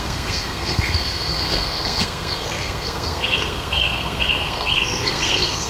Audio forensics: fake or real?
fake